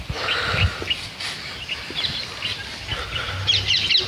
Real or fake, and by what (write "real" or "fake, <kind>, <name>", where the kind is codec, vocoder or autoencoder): real